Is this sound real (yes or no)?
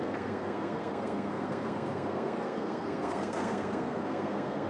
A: no